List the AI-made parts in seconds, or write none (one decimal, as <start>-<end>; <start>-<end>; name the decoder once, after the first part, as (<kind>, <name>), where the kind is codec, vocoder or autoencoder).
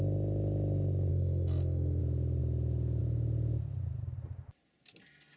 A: 1.1-2.0 (codec, SNAC)